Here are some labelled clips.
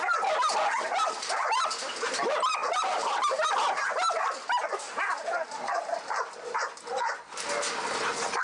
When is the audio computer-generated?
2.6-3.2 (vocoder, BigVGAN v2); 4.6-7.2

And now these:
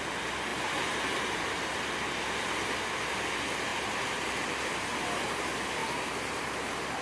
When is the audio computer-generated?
0.5-1.7 (vocoder, BigVGAN v2); 3.7-4.9; 5.8-7.0